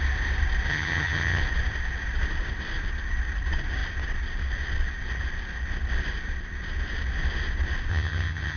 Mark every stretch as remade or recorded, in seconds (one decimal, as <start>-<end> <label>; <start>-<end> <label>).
0.0-0.7 recorded; 0.7-1.4 remade; 1.4-7.9 recorded; 7.9-8.6 remade